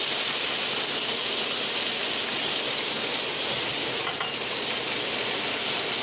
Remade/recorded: recorded